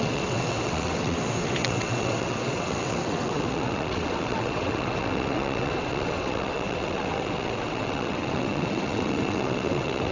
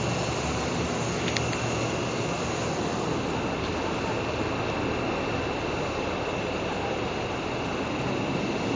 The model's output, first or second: first